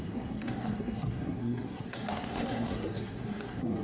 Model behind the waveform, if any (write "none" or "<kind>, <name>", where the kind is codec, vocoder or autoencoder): codec, SNAC